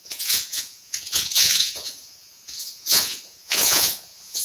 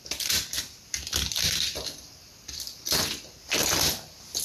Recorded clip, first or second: second